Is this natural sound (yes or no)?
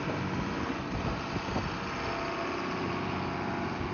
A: yes